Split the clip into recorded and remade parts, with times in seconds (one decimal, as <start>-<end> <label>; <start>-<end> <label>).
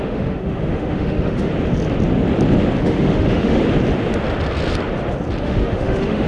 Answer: 0.0-1.5 remade; 1.5-2.8 recorded; 2.8-3.6 remade; 3.6-5.4 recorded; 5.4-6.3 remade